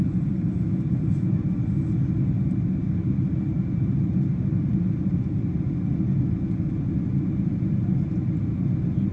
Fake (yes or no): no